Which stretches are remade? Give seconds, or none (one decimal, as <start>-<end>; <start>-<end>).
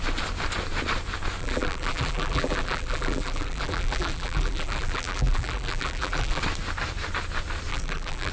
1.4-6.4; 7.7-8.3